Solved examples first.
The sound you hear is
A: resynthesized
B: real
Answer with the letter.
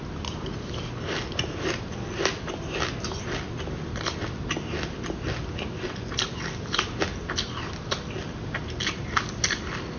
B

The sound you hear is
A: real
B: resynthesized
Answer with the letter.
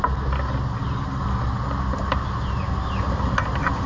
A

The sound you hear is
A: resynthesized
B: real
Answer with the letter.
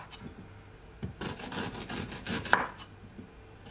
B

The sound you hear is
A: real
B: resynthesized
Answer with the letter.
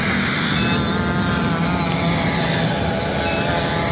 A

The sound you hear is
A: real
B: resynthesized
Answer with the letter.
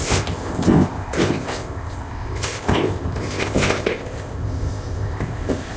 B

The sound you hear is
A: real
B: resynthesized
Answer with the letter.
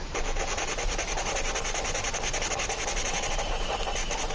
A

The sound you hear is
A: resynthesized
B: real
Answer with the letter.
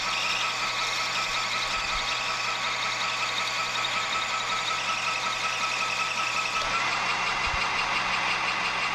B